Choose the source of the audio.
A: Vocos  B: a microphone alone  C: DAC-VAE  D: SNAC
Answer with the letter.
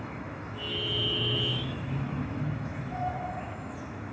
C